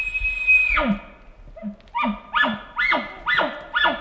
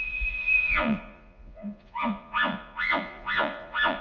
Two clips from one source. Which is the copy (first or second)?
second